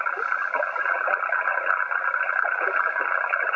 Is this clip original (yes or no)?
yes